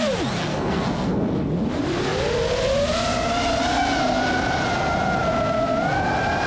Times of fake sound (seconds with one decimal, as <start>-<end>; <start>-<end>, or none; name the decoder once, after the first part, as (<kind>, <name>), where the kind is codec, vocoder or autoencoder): 0.5-1.5 (codec, SNAC)